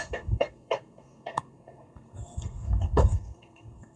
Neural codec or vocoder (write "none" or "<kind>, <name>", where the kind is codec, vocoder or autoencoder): codec, SNAC